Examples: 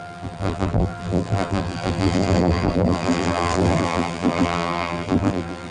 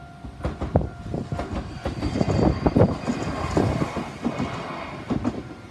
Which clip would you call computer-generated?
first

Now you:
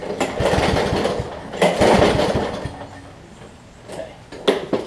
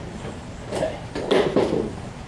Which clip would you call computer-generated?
second